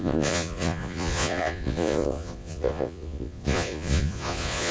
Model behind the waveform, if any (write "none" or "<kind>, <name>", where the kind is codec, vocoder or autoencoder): vocoder, Vocos